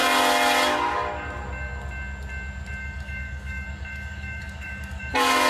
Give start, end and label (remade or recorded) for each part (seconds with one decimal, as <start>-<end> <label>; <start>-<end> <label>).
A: 0.0-2.8 recorded; 2.8-5.1 remade; 5.1-5.5 recorded